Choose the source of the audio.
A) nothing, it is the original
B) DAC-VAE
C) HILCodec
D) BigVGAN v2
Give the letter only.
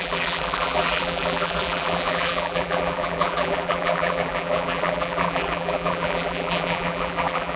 D